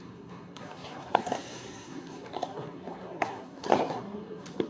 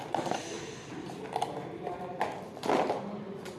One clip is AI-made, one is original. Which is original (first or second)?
second